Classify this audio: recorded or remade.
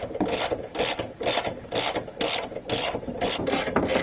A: recorded